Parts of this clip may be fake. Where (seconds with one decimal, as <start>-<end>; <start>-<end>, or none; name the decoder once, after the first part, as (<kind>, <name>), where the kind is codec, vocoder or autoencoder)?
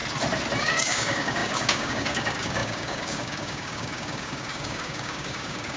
0.6-5.8 (codec, DAC)